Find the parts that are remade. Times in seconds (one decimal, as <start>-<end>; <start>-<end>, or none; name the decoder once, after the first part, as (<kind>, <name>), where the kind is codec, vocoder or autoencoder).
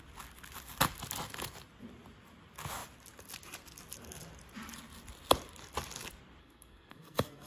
6.4-7.5 (codec, SNAC)